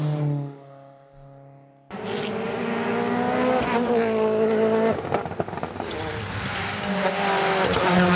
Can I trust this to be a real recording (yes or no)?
yes